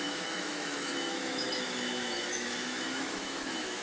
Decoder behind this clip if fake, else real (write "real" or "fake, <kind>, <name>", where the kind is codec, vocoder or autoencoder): fake, autoencoder, DAC-VAE